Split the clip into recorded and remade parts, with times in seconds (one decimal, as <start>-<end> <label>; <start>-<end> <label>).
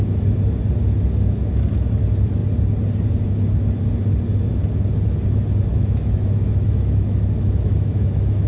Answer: 0.0-5.7 recorded; 5.7-8.5 remade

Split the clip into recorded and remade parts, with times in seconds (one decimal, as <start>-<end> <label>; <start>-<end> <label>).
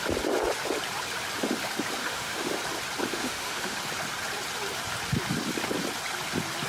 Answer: 0.0-2.0 recorded; 2.0-2.6 remade; 2.6-3.1 recorded; 3.1-3.8 remade; 3.8-6.7 recorded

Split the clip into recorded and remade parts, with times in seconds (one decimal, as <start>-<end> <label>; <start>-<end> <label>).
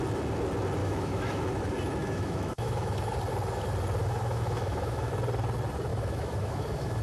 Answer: 0.0-0.8 recorded; 0.8-1.5 remade; 1.5-2.0 recorded; 2.0-3.1 remade; 3.1-4.0 recorded; 4.0-5.1 remade; 5.1-5.9 recorded; 5.9-7.0 remade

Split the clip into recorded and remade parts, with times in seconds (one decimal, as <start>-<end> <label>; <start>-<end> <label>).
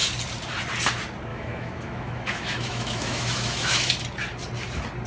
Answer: 0.0-1.3 recorded; 1.3-3.9 remade; 3.9-5.1 recorded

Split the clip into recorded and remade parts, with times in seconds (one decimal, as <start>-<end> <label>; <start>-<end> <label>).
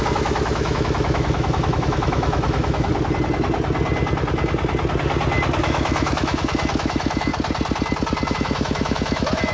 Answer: 0.0-2.9 remade; 2.9-5.6 recorded; 5.6-7.3 remade; 7.3-8.3 recorded; 8.3-9.5 remade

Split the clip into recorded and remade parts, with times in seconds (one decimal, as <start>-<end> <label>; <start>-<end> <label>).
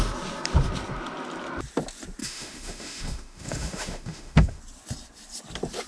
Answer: 0.0-2.2 recorded; 2.2-4.6 remade; 4.6-5.9 recorded